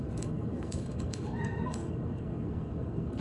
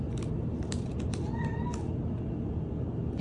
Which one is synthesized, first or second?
first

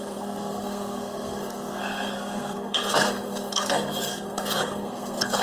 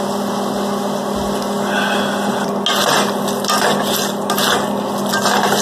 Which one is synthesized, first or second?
first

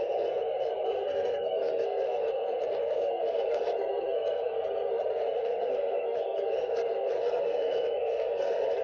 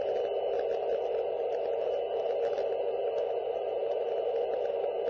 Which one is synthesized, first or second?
first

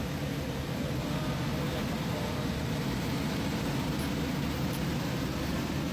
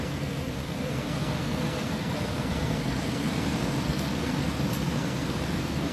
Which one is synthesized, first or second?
second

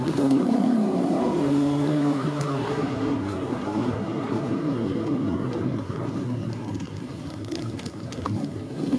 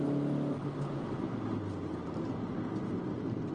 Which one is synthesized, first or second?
first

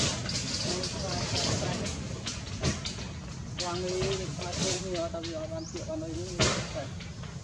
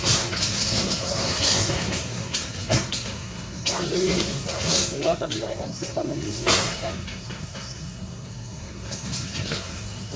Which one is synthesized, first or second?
second